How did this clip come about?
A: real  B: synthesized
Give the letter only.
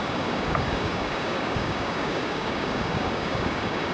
B